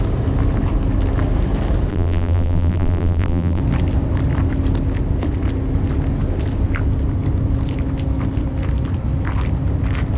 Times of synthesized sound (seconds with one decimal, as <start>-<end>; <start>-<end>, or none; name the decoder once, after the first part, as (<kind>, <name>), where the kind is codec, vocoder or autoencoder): 1.9-3.6 (vocoder, BigVGAN v2)